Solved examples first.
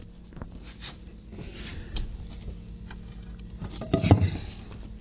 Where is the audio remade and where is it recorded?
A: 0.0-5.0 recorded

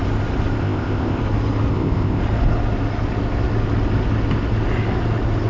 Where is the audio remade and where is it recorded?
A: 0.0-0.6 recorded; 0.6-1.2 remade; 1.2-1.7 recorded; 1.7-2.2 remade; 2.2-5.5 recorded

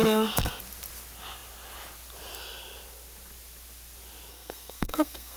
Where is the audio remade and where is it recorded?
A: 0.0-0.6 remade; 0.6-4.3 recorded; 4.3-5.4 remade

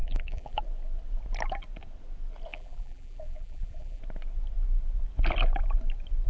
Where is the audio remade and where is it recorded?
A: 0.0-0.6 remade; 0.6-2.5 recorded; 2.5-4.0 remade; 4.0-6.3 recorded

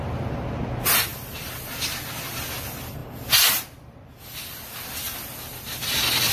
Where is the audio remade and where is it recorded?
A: 0.0-6.3 recorded